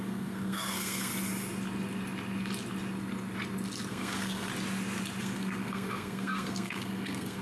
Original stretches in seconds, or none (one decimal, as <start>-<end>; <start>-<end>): 1.1-3.9; 4.5-5.2